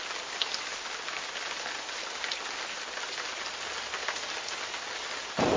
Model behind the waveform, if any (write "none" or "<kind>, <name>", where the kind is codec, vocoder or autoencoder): none